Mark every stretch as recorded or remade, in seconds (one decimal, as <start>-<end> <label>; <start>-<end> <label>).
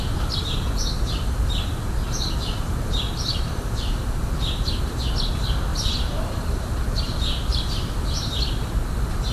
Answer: 0.0-3.3 recorded; 3.3-4.8 remade; 4.8-5.7 recorded; 5.7-6.7 remade; 6.7-7.5 recorded; 7.5-8.3 remade; 8.3-9.3 recorded